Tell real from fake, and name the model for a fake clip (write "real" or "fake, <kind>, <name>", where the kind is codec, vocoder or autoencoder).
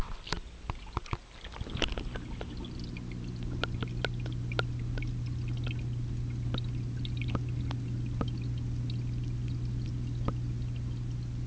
real